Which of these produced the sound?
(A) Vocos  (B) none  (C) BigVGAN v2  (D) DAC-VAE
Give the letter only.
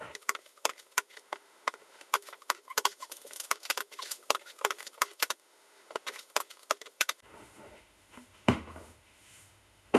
D